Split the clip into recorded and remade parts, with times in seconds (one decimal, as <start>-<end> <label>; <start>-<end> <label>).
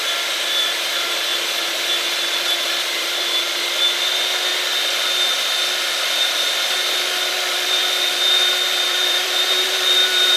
0.0-1.3 remade; 1.3-2.8 recorded; 2.8-4.5 remade; 4.5-5.9 recorded; 5.9-10.4 remade